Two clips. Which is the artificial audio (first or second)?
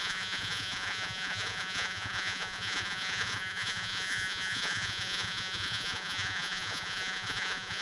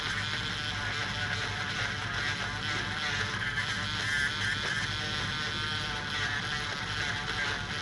first